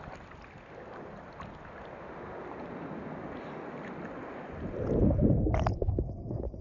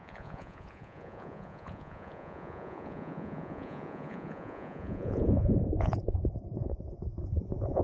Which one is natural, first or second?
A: first